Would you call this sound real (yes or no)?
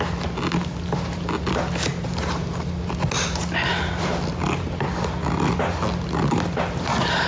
yes